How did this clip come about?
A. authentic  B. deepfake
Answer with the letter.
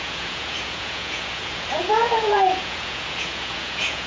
B